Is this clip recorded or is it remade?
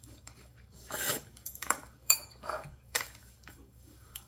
remade